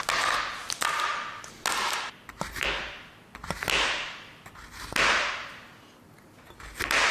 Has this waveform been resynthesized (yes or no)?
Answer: no